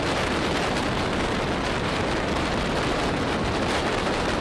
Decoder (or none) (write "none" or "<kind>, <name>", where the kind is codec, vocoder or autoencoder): none